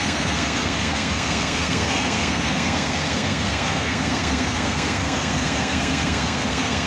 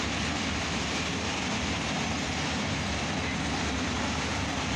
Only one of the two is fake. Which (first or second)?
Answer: first